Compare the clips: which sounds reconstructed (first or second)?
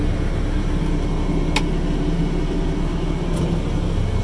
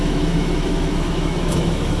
second